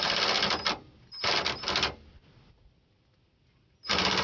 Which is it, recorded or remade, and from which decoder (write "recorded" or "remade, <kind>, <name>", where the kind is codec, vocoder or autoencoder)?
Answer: recorded